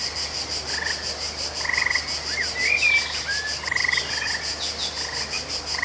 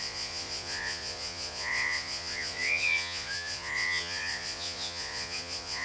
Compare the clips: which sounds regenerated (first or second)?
second